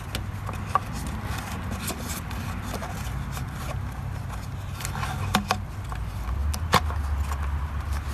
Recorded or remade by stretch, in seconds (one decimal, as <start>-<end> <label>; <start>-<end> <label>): 0.0-8.1 recorded

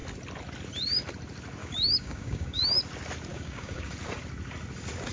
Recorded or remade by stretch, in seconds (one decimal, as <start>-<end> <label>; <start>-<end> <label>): 0.0-1.6 recorded; 1.6-2.6 remade; 2.6-3.3 recorded; 3.3-3.9 remade; 3.9-5.1 recorded

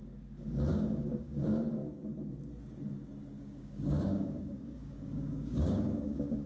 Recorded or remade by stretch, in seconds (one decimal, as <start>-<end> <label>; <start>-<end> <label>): 0.0-1.8 remade; 1.8-3.4 recorded; 3.4-6.5 remade